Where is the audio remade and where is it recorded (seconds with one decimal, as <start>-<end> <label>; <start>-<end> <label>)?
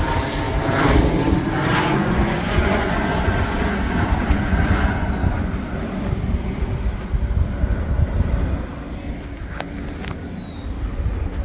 0.0-1.7 recorded; 1.7-5.5 remade; 5.5-11.4 recorded